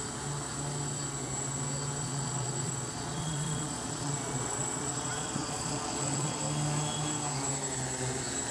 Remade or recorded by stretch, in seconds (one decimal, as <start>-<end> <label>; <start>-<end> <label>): 0.0-2.0 recorded; 2.0-6.4 remade; 6.4-8.5 recorded